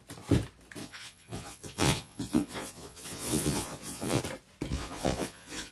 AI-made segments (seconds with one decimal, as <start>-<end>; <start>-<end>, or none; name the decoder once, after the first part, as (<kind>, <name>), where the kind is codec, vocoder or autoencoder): 0.8-4.2 (vocoder, Vocos); 4.7-5.7